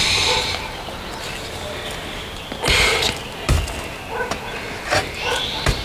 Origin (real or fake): real